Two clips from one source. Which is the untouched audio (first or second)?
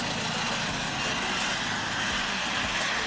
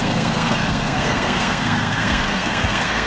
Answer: first